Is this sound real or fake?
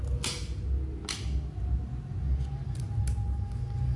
real